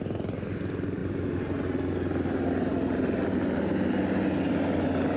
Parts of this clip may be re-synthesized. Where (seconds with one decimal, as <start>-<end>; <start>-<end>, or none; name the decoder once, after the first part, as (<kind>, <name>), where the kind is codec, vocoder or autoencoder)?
none